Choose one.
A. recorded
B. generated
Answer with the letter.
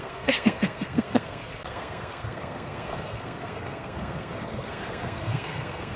B